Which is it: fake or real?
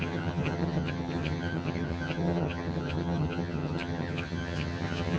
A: fake